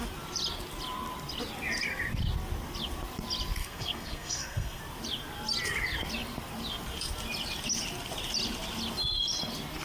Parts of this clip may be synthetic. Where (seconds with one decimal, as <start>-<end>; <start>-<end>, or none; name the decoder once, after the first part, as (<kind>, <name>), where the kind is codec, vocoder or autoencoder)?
3.6-4.8 (codec, SNAC)